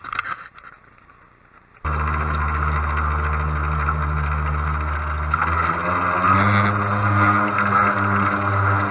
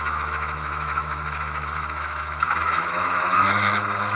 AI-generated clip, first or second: second